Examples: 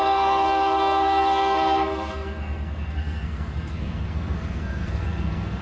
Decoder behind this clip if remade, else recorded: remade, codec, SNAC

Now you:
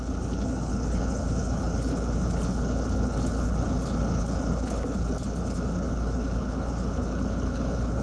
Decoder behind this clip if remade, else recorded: remade, codec, HILCodec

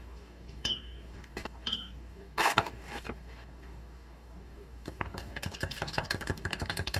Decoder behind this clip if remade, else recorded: remade, codec, DAC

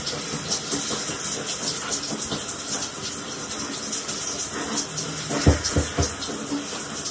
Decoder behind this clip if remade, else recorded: recorded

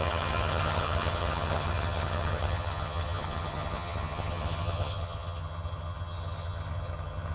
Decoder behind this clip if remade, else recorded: remade, vocoder, HiFi-GAN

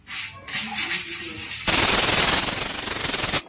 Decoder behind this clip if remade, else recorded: recorded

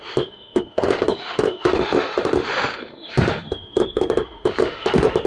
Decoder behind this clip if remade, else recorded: remade, autoencoder, DAC-VAE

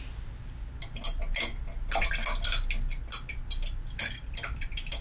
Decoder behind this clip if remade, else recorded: recorded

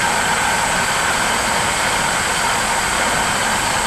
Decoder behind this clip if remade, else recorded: recorded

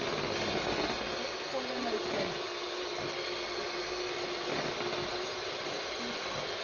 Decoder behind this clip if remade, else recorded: recorded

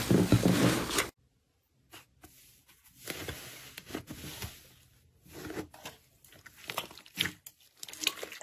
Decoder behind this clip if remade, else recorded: recorded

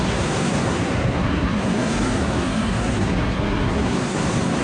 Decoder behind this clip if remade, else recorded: remade, codec, SNAC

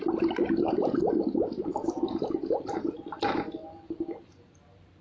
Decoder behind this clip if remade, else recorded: recorded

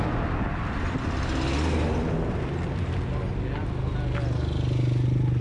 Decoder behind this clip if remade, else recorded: recorded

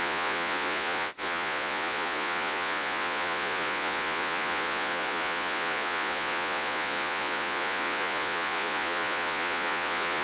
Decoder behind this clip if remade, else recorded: remade, vocoder, Vocos